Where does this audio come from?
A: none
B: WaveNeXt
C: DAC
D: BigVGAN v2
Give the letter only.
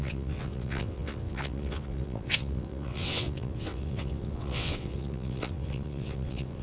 B